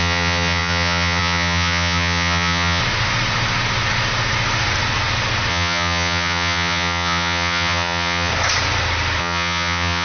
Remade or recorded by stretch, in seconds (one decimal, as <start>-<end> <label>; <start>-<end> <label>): 0.0-2.8 remade; 2.8-5.5 recorded; 5.5-8.3 remade; 8.3-9.2 recorded; 9.2-10.0 remade